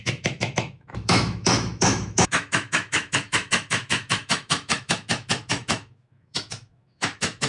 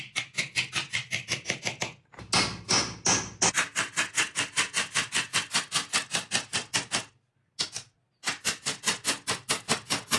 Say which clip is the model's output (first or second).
first